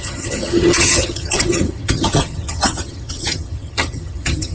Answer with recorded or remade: remade